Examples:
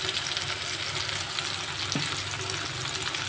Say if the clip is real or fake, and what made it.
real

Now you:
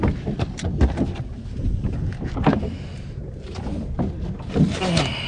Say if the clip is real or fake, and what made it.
real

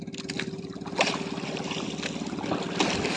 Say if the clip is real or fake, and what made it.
real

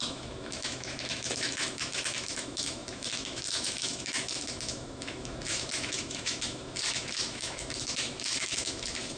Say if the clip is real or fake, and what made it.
fake, autoencoder, DAC-VAE